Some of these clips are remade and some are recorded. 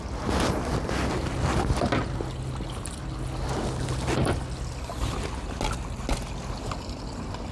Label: recorded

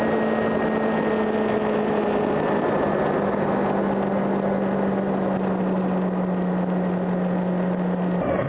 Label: recorded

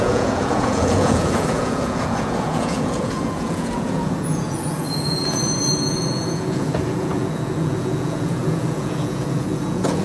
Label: remade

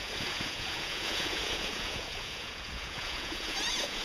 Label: remade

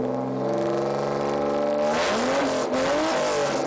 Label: recorded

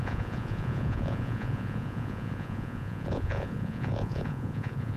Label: remade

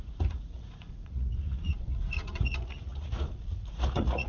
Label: remade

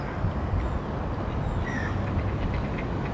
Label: recorded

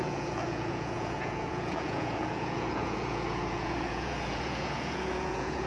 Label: remade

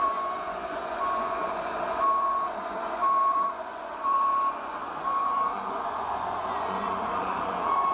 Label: remade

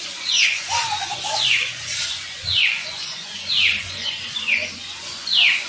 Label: remade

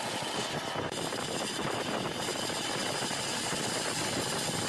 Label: recorded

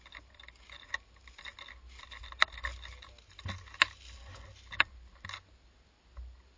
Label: recorded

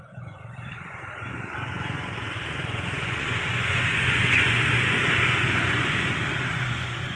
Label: remade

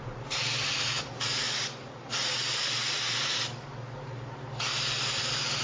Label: recorded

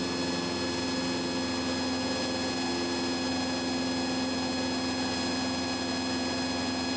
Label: recorded